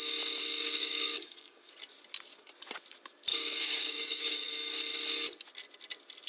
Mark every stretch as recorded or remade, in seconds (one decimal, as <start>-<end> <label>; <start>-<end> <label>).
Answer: 0.0-0.4 recorded; 0.4-1.7 remade; 1.7-3.3 recorded; 3.3-4.5 remade; 4.5-6.3 recorded